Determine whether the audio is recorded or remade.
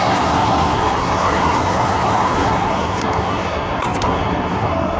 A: remade